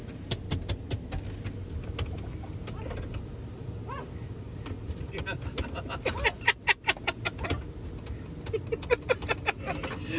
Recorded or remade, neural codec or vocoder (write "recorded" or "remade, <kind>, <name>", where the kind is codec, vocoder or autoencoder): recorded